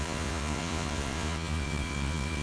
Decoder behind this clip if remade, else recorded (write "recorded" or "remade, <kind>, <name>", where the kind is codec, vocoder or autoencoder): remade, vocoder, Vocos